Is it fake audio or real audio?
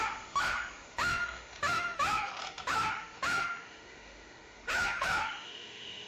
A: fake